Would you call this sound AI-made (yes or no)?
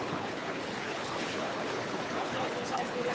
yes